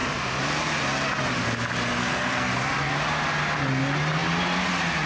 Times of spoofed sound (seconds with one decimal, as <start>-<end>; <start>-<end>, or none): 2.0-2.5